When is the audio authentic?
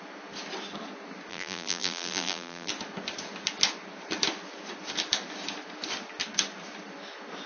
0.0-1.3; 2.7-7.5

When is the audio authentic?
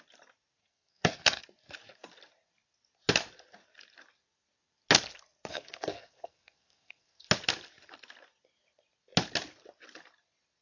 0.0-0.6; 1.4-5.5; 7.3-10.6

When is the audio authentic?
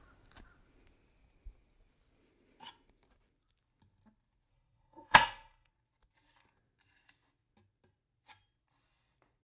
0.0-4.5; 5.7-9.4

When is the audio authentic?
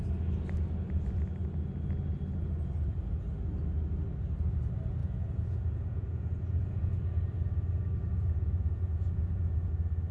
0.0-5.0; 7.0-8.1; 9.7-10.1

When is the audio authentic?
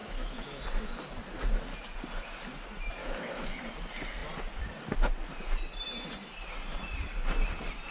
0.6-3.0; 3.6-7.9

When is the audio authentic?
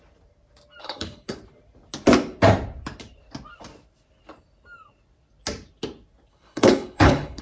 0.0-0.8; 1.4-6.3